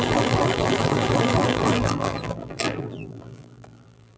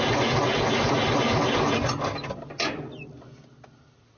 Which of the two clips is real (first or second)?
second